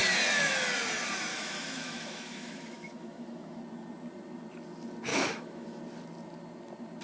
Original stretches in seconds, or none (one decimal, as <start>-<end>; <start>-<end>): 0.0-1.3; 3.6-5.1; 5.8-7.0

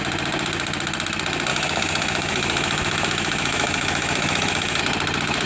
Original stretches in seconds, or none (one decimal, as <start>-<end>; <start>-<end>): 0.0-1.5; 4.8-5.5

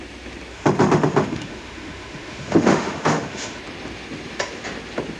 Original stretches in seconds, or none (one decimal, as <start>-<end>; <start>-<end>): 0.0-0.5; 3.6-5.2

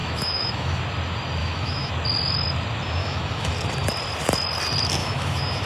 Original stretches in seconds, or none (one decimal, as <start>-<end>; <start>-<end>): 0.8-1.4; 1.9-3.0; 3.5-5.0